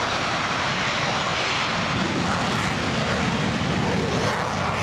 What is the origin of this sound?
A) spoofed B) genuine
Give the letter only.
B